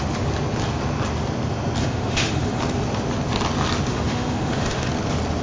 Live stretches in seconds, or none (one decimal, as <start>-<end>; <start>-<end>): 0.0-1.8; 2.6-3.9; 4.9-5.4